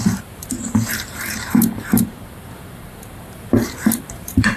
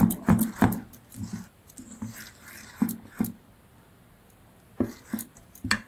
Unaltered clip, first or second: second